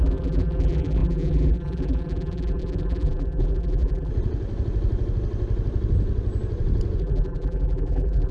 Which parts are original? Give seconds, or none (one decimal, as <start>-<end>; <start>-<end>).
4.1-7.0